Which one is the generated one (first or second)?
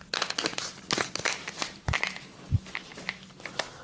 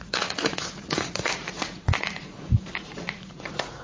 second